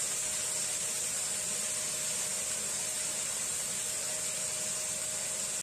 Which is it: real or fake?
real